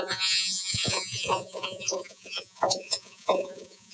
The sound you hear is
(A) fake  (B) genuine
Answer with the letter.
A